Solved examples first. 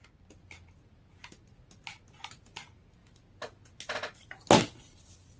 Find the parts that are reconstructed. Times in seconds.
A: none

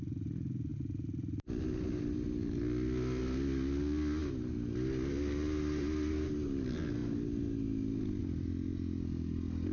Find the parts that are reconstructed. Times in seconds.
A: none

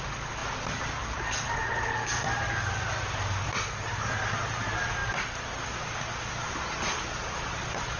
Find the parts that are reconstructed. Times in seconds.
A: none

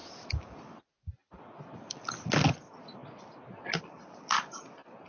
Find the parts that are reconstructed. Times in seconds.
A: none